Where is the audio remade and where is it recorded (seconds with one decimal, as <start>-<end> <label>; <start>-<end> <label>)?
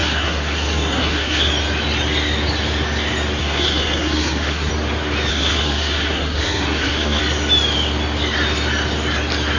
0.0-1.5 remade; 1.5-3.4 recorded; 3.4-4.7 remade; 4.7-5.3 recorded; 5.3-7.2 remade; 7.2-9.6 recorded